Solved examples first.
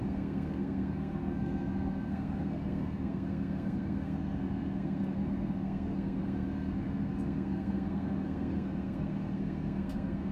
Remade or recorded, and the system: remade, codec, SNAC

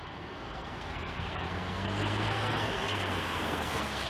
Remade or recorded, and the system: remade, codec, SNAC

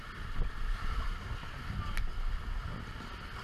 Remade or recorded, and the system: recorded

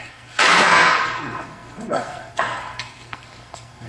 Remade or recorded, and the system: remade, codec, SNAC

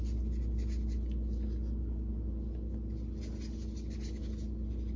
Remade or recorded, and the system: recorded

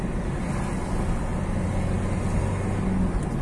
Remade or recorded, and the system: recorded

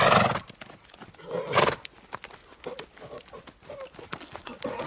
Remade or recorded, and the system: recorded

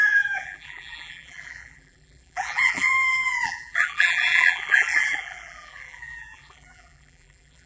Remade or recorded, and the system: remade, vocoder, BigVGAN v2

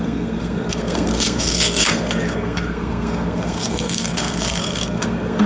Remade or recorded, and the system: remade, codec, SNAC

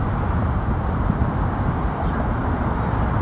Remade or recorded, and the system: recorded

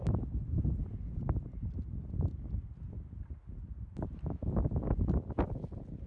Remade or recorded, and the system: recorded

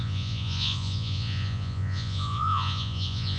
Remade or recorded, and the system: remade, vocoder, Vocos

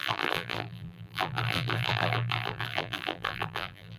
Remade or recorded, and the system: remade, vocoder, BigVGAN v2